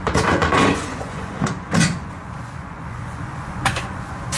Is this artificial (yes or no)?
yes